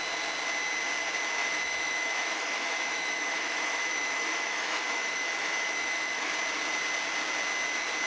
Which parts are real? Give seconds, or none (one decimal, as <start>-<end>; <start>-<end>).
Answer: 0.0-1.4; 6.3-8.1